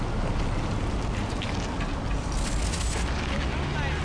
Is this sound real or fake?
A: real